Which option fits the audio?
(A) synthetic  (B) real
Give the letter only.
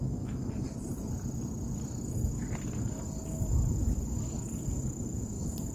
B